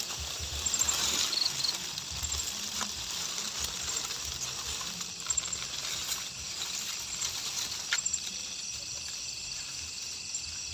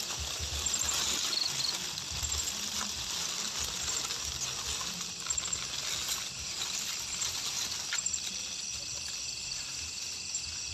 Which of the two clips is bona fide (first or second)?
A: second